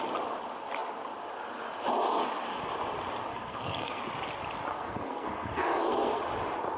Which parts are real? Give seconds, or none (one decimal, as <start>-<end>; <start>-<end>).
0.0-3.3; 4.0-4.7; 6.2-6.8